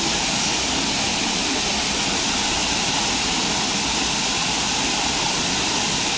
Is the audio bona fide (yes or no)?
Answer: yes